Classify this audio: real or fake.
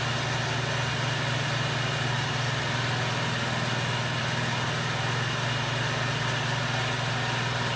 real